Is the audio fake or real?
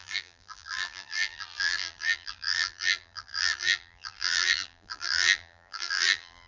fake